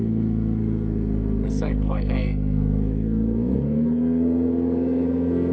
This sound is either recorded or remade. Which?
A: remade